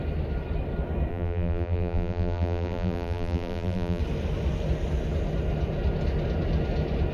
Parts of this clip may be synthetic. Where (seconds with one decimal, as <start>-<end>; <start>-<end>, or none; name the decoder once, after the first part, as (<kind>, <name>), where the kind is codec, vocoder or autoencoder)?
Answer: 1.1-4.0 (vocoder, BigVGAN v2)